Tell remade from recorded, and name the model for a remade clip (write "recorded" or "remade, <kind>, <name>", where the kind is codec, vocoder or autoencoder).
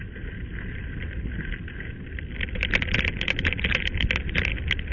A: recorded